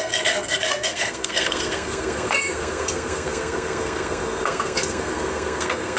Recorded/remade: remade